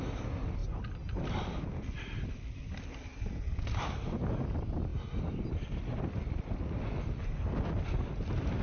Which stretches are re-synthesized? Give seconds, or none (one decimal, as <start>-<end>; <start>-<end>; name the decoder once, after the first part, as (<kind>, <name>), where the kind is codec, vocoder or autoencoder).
none